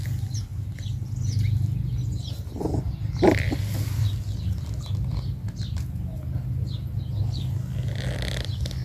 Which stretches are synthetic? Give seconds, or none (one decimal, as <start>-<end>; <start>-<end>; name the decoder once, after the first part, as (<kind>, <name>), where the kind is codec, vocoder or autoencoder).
none